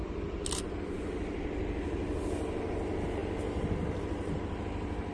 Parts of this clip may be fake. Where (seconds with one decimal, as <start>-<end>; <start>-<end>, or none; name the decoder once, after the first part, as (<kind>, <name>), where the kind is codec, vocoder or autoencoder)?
none